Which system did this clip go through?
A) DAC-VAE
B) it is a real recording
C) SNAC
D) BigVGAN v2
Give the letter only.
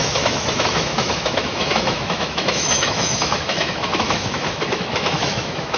A